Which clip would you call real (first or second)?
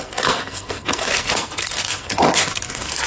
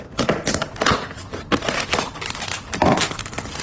second